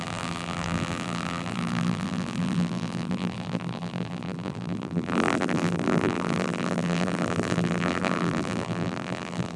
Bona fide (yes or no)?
no